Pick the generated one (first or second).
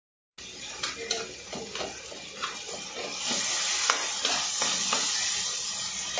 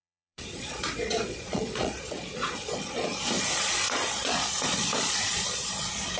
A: second